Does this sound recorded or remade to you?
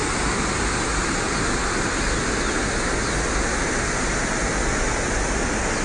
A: recorded